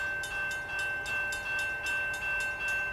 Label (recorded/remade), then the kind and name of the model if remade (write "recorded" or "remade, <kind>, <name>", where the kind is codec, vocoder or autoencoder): recorded